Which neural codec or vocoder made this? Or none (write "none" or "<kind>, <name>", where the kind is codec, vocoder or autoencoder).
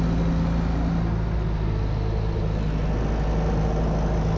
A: none